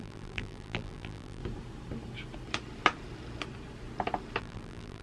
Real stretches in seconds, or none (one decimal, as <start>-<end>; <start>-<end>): 1.4-4.4

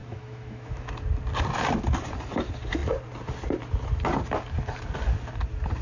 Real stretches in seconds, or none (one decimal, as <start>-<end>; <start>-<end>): 0.9-5.8

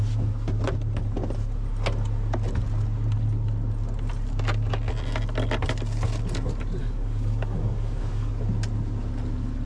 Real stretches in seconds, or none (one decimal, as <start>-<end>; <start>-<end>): 0.0-6.8; 8.3-9.7

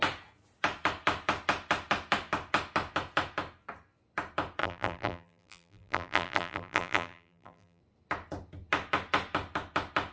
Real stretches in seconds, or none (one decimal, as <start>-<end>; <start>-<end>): 0.0-4.6; 7.8-10.1

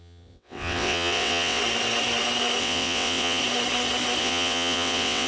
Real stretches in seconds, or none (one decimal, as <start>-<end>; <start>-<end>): 1.6-2.6; 3.4-4.2

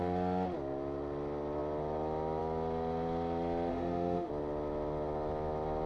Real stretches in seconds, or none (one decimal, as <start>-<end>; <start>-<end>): 0.0-3.7; 4.3-5.9

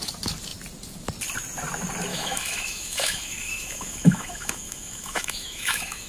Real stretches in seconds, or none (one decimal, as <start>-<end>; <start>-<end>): 0.0-2.1

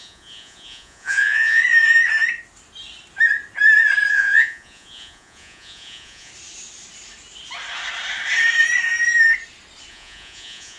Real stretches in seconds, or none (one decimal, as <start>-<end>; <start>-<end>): 1.6-4.1; 6.3-9.9